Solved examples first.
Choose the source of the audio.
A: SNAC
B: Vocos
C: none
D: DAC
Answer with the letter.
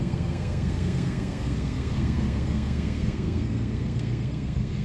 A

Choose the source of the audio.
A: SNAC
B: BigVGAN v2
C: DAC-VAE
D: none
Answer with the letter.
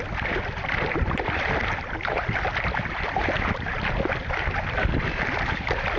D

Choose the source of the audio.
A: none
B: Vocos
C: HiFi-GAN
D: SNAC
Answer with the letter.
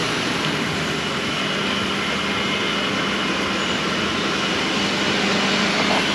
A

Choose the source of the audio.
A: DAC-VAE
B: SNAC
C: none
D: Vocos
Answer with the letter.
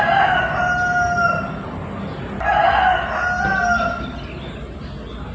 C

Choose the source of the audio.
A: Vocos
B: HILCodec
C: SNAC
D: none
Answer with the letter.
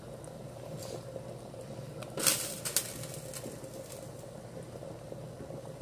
D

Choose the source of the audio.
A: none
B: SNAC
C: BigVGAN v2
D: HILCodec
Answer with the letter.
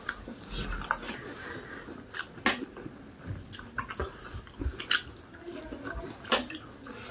A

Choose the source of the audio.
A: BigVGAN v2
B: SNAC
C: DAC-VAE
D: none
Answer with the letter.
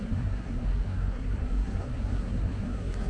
B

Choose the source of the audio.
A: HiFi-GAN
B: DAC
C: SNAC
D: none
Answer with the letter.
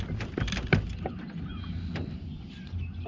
D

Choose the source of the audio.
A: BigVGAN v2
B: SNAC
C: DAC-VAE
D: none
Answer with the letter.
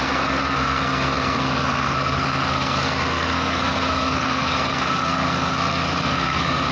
B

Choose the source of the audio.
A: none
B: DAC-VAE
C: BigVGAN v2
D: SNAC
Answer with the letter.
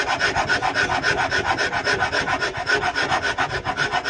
A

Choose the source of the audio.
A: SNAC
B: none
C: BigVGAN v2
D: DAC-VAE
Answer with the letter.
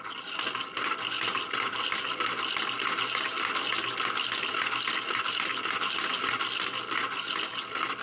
B